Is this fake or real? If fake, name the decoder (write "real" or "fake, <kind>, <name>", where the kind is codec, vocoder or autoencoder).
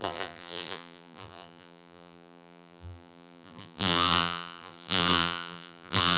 fake, vocoder, BigVGAN v2